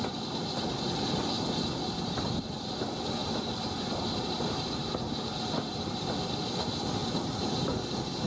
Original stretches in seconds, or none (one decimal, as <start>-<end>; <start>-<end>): 0.0-3.2; 6.1-7.0